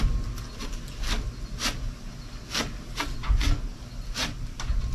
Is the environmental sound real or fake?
real